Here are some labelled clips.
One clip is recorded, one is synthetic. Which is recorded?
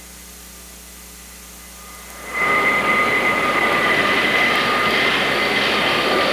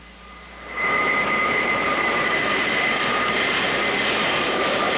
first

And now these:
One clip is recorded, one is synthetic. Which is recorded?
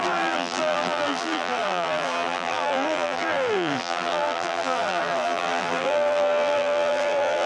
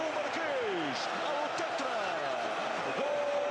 second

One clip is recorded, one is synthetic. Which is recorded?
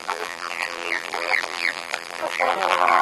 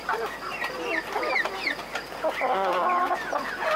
second